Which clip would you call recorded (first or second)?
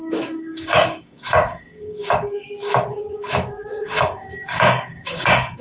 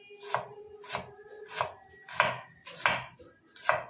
second